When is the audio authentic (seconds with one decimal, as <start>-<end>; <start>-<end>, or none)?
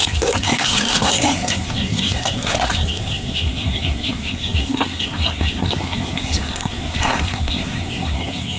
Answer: none